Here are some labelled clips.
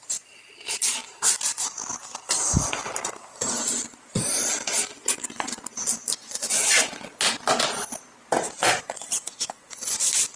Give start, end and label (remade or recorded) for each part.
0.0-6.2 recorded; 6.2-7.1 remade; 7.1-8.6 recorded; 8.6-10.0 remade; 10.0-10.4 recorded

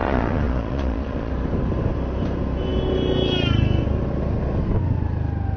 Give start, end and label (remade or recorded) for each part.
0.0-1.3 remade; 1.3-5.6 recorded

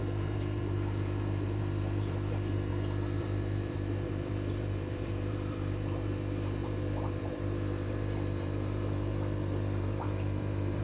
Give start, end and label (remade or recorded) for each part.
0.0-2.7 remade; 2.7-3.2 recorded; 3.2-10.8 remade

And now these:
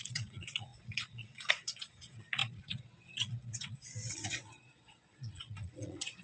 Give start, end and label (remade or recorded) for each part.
0.0-6.2 remade

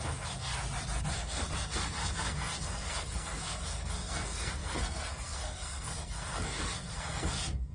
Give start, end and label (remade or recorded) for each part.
0.0-0.5 remade; 0.5-1.1 recorded; 1.1-7.7 remade

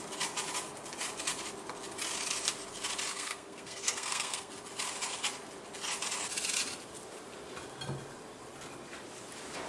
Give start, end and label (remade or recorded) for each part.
0.0-3.1 recorded; 3.1-4.5 remade; 4.5-9.7 recorded